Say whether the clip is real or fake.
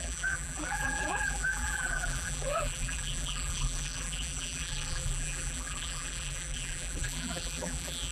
fake